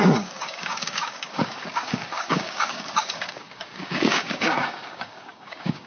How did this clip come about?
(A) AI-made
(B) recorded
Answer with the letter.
A